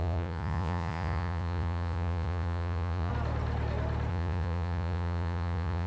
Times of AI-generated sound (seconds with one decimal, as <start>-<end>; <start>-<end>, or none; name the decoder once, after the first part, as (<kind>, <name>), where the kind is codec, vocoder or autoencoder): 0.0-3.1 (vocoder, Vocos); 4.1-5.9